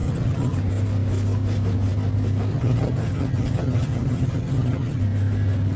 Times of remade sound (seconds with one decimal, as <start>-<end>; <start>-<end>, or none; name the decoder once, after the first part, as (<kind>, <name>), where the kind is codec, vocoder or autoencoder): 0.0-0.6 (vocoder, HiFi-GAN); 2.5-5.0